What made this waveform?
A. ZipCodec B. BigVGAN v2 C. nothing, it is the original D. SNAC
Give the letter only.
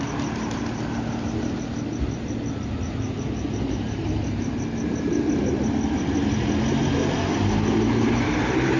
C